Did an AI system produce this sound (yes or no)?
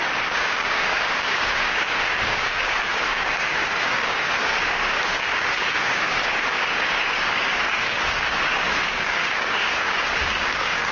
yes